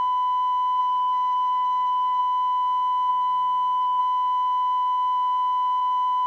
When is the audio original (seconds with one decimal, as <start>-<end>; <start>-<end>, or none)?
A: 0.0-0.8; 2.2-3.1; 4.0-6.3